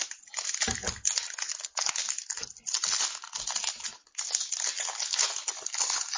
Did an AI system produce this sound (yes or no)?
no